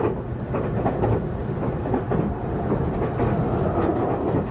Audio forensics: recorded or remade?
recorded